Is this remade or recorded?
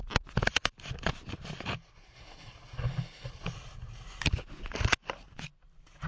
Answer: recorded